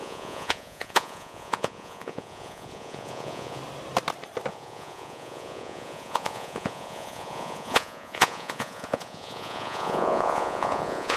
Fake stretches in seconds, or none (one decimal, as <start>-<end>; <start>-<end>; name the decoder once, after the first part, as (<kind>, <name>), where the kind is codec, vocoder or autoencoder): 0.0-3.6 (vocoder, Vocos); 4.5-11.2